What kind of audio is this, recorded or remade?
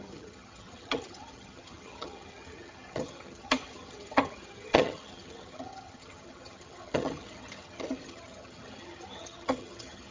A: remade